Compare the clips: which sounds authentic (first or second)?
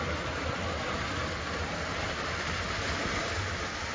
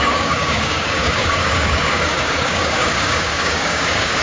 first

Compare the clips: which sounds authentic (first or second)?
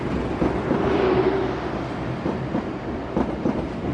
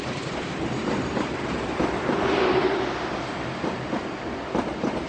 first